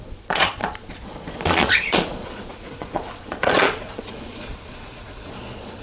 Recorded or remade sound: remade